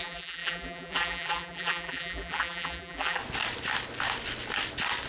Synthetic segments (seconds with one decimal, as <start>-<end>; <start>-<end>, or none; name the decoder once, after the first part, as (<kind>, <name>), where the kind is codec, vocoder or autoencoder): 0.0-3.2 (vocoder, BigVGAN v2)